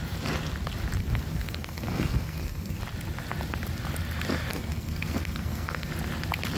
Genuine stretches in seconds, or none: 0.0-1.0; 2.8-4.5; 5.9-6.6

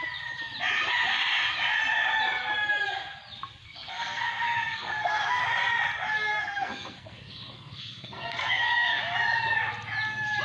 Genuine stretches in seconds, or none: 0.0-3.6; 5.4-6.3; 9.0-10.4

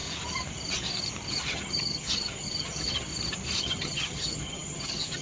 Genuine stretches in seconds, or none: 0.0-1.3; 3.1-3.6

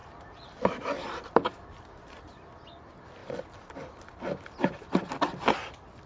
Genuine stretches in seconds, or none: 2.3-6.1

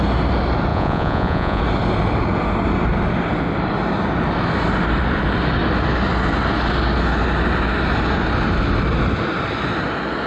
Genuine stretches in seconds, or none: 0.0-0.7; 1.6-10.3

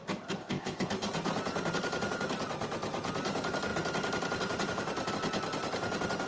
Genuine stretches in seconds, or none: 0.0-0.4; 0.9-6.3

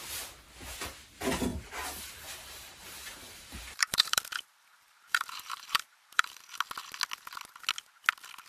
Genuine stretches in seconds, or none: 0.0-1.5; 4.2-4.7; 6.4-8.5

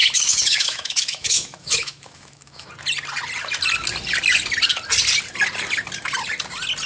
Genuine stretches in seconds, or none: 2.7-6.9